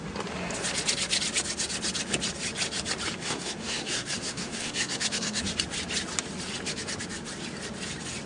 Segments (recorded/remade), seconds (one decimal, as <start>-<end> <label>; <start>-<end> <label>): 0.0-3.2 recorded; 3.2-5.4 remade; 5.4-8.3 recorded